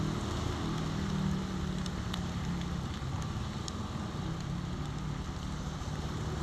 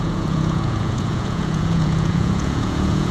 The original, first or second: first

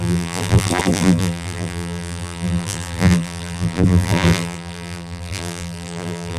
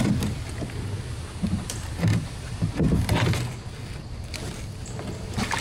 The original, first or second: second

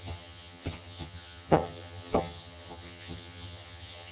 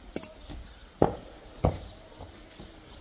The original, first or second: second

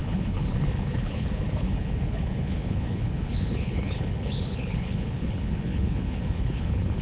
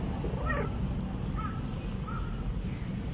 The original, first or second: second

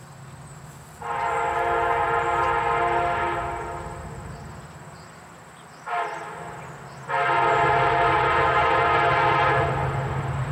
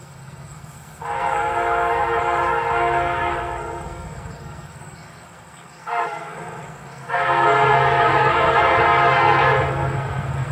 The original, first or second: first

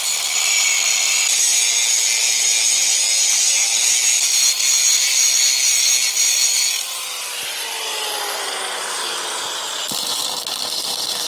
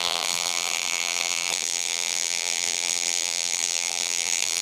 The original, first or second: first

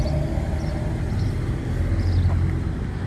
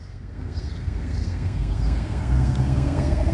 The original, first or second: first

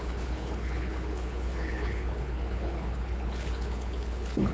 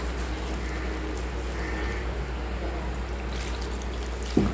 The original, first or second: second